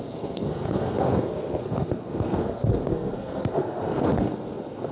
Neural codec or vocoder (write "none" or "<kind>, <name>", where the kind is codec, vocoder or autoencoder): codec, SNAC